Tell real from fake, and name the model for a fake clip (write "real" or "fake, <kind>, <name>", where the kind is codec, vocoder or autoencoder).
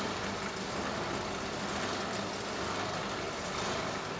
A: real